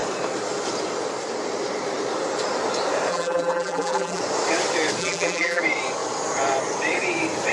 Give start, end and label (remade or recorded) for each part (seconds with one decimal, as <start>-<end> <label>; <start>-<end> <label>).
0.0-3.1 recorded; 3.1-4.2 remade; 4.2-5.0 recorded; 5.0-5.6 remade; 5.6-7.5 recorded